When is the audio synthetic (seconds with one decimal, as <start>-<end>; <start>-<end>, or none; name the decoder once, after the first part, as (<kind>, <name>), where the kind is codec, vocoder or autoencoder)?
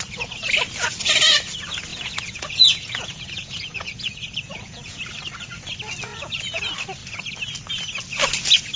1.9-5.0 (vocoder, Vocos); 6.1-6.6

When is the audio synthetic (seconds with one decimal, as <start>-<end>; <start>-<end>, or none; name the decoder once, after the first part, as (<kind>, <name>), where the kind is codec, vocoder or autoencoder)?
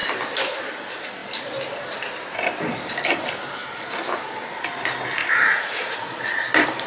5.2-6.2 (vocoder, Vocos)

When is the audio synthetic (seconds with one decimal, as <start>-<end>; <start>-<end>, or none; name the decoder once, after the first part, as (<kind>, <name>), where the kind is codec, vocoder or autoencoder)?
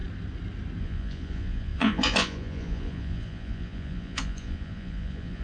0.8-5.4 (vocoder, Vocos)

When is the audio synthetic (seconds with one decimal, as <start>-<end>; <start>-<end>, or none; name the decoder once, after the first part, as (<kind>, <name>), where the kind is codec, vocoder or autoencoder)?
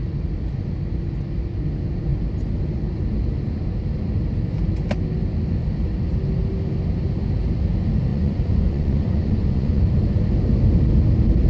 8.1-9.8 (vocoder, Vocos)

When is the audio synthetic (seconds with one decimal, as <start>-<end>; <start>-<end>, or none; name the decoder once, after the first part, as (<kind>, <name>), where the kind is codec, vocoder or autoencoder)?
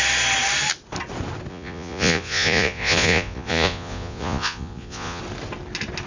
1.5-5.2 (vocoder, Vocos)